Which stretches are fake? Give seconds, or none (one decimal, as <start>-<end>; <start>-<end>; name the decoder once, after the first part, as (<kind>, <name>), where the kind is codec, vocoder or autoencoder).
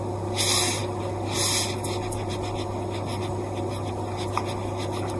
none